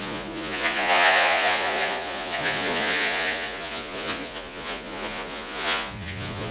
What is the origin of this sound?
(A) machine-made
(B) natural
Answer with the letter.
A